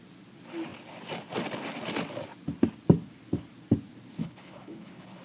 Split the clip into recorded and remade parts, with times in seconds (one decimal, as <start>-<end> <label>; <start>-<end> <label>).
0.0-4.2 recorded; 4.2-5.2 remade